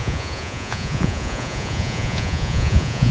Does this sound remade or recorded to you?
remade